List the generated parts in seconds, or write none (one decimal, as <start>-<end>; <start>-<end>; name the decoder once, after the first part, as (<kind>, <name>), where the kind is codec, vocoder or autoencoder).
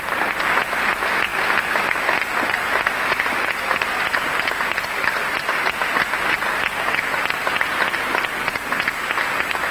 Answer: none